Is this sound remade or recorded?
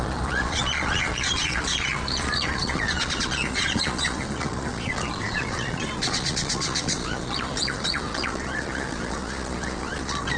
remade